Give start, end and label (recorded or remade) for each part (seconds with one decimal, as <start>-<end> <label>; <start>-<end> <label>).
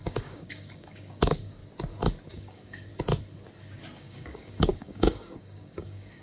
0.0-1.6 remade; 1.6-2.3 recorded; 2.3-2.9 remade; 2.9-4.0 recorded; 4.0-6.2 remade